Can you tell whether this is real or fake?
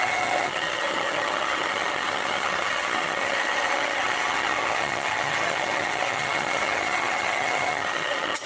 fake